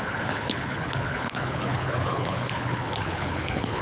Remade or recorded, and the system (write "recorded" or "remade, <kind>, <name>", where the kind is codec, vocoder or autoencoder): remade, codec, HILCodec